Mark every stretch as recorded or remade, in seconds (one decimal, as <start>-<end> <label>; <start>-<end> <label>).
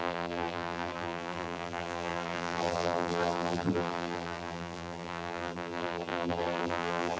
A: 0.0-7.2 remade